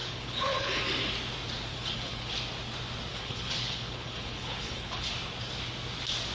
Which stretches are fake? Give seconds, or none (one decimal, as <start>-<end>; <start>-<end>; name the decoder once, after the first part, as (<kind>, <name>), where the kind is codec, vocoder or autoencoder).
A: 0.0-0.8 (codec, HILCodec); 1.7-2.3; 3.1-5.1